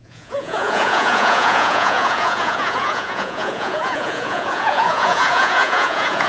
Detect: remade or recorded remade